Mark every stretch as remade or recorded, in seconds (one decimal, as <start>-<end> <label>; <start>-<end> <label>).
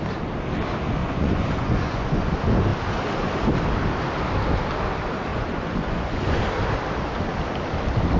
0.0-1.0 recorded; 1.0-2.3 remade; 2.3-5.3 recorded; 5.3-6.4 remade; 6.4-8.2 recorded